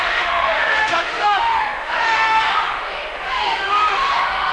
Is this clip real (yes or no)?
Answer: no